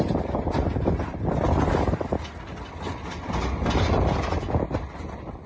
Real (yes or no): yes